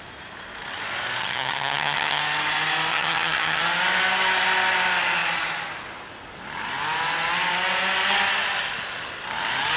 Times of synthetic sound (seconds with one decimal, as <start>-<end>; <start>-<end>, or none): 1.2-2.2; 2.9-3.6